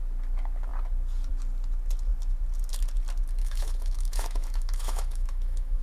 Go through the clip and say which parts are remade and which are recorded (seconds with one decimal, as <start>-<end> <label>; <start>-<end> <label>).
0.0-3.4 recorded; 3.4-5.8 remade